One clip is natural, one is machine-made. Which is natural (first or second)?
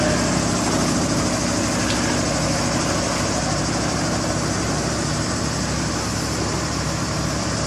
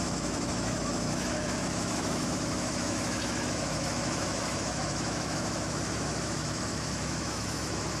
first